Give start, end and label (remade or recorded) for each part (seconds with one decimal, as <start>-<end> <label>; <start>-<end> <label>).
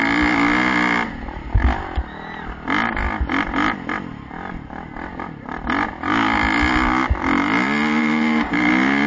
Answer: 0.0-8.0 recorded; 8.0-8.7 remade; 8.7-9.1 recorded